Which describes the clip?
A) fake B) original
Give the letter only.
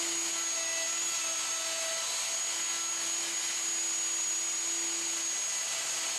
B